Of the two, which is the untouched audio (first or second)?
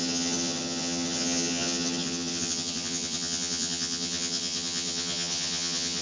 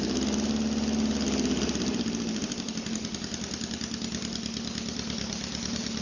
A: second